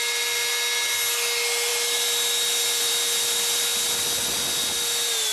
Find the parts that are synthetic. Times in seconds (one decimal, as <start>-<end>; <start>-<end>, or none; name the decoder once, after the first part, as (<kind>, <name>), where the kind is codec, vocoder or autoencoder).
none